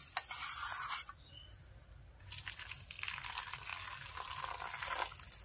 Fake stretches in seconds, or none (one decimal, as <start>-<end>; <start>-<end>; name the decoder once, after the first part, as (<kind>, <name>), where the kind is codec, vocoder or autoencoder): none